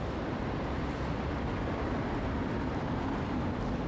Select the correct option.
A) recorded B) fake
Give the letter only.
B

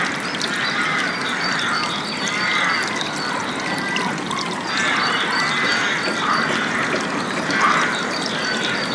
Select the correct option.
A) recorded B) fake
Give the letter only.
A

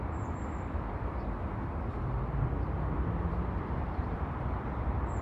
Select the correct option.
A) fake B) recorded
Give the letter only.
A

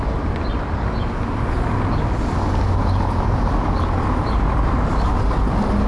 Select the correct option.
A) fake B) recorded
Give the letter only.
B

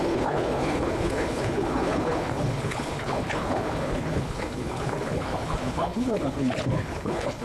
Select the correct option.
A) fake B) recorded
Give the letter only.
A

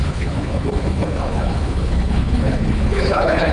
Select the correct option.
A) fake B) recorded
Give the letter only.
A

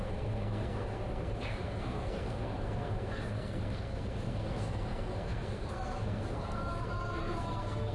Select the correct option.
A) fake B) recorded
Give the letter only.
A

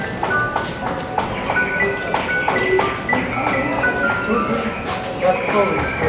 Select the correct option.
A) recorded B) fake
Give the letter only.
A